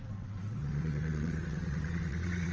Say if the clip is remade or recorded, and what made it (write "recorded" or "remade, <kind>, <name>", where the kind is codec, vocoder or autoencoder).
remade, vocoder, WaveNeXt